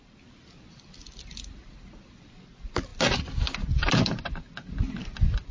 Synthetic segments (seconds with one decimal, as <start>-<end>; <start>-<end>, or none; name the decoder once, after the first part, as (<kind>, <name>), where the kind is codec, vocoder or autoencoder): none